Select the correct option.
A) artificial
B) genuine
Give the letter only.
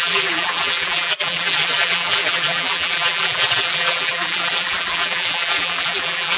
A